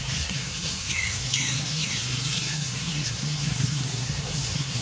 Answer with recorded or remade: remade